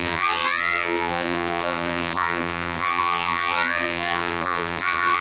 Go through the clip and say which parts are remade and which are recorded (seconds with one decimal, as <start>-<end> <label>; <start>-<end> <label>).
0.0-5.2 remade